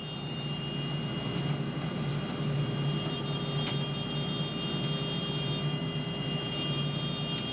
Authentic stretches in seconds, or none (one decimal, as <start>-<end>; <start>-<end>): 0.0-7.5